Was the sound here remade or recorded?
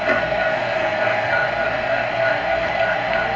remade